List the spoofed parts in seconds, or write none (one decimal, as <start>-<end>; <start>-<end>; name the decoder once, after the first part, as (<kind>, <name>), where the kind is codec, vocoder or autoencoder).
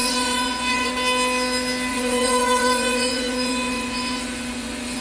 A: 0.0-0.9 (vocoder, Vocos); 1.9-5.0